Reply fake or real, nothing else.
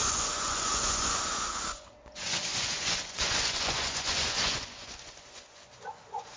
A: fake